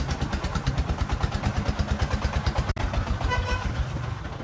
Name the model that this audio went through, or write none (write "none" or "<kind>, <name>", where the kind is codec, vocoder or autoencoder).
none